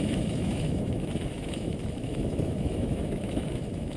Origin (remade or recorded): remade